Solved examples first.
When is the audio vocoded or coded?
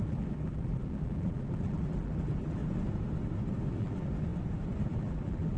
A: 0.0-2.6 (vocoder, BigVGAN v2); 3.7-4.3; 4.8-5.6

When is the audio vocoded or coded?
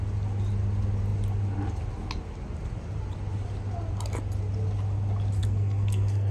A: 5.4-6.3 (codec, SNAC)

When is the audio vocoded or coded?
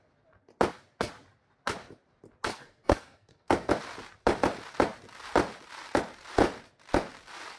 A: 2.5-3.7 (codec, SNAC)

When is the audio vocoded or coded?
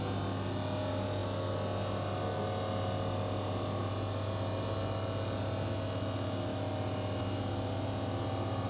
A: none